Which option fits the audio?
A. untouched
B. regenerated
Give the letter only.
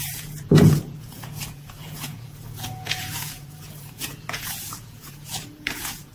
B